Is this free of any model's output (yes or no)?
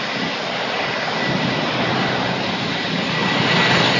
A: yes